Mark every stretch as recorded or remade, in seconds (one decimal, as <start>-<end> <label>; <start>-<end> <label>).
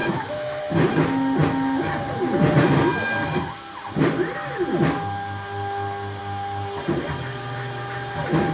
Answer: 0.0-0.6 remade; 0.6-8.5 recorded